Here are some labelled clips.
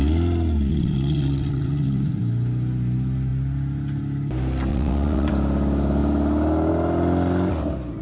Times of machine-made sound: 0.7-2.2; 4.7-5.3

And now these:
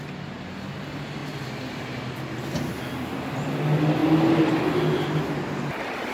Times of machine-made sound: none

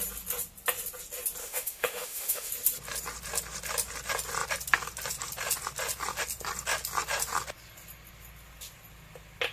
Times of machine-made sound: 1.4-2.5

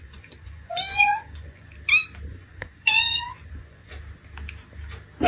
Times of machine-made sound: 0.0-1.7; 2.3-3.9